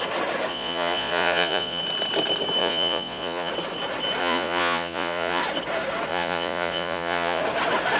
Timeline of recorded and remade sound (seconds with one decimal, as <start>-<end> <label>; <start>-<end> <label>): 0.0-0.5 recorded; 0.5-1.8 remade; 1.8-2.6 recorded; 2.6-3.5 remade; 3.5-4.2 recorded; 4.2-5.4 remade; 5.4-6.1 recorded; 6.1-7.4 remade; 7.4-8.0 recorded